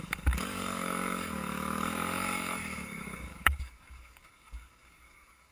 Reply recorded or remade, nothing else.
remade